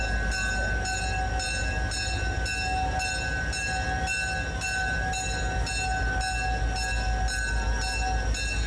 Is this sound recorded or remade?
recorded